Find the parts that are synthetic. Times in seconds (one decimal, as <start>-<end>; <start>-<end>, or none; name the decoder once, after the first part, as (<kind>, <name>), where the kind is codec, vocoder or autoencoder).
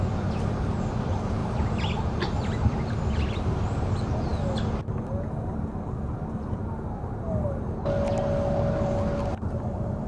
1.4-3.9 (vocoder, BigVGAN v2)